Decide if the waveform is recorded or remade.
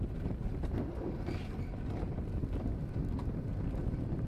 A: recorded